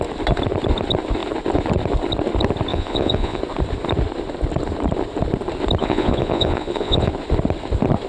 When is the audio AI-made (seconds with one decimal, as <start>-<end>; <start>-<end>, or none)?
2.7-3.4; 5.8-7.1